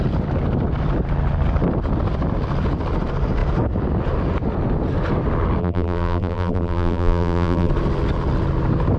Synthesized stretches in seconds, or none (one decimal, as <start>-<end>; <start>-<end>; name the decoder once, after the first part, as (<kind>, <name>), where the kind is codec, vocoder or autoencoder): 5.6-7.7 (vocoder, BigVGAN v2)